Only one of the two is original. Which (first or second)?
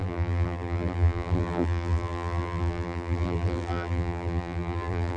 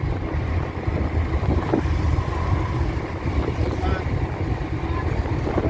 second